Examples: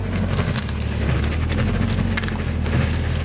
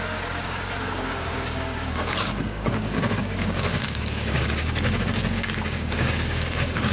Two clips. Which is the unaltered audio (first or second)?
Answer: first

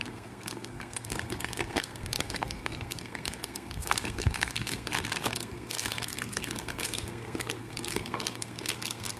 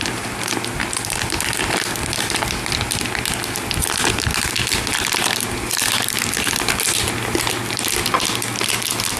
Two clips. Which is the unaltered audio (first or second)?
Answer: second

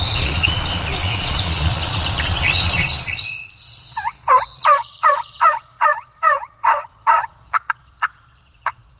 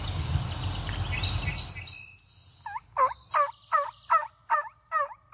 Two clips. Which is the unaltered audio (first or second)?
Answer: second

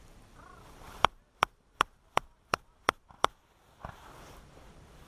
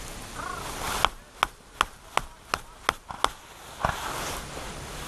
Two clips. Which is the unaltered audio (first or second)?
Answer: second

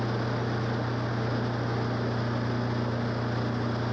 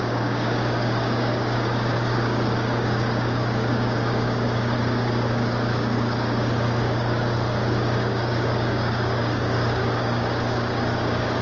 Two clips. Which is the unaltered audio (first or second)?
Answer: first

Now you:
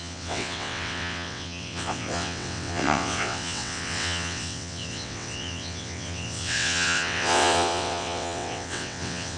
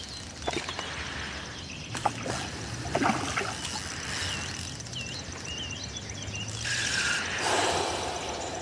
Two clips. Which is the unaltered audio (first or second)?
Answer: second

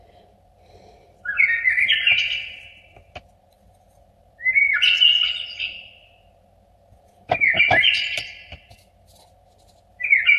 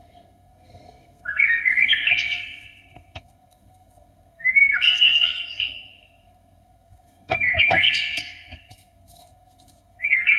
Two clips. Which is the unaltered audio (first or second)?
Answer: first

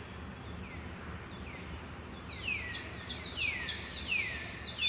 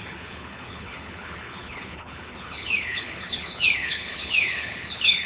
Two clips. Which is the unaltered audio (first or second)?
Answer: first